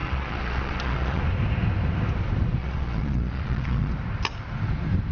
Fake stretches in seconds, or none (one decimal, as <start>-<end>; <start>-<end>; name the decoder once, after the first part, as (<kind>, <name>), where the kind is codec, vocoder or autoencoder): 0.0-1.2 (vocoder, Vocos); 2.6-3.9